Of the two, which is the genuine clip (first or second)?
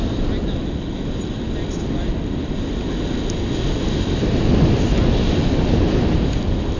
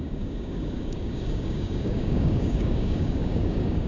first